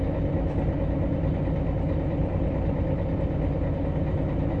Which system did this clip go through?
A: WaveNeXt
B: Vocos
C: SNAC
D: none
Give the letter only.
D